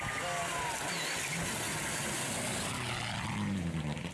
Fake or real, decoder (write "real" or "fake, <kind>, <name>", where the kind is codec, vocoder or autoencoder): real